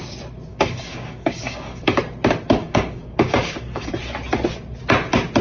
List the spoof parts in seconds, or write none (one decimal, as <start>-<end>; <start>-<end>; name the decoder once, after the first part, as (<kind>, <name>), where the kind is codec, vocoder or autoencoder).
0.5-2.0 (codec, DAC); 2.6-3.9